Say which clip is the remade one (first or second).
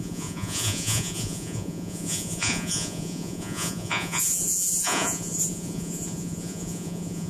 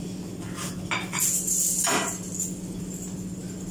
first